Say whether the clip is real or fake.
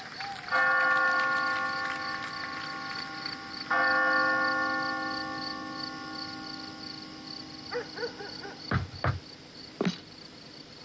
real